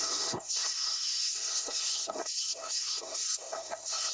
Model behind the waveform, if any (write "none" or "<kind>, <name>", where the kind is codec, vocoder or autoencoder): codec, SNAC